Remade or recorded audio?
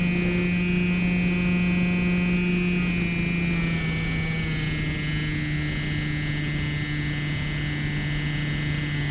recorded